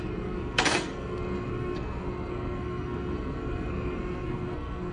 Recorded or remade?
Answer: remade